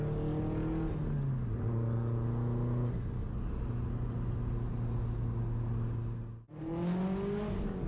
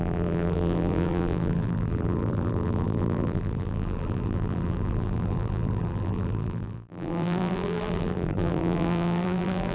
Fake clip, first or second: second